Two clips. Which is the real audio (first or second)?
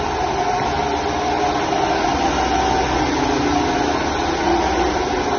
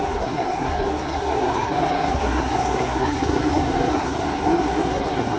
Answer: first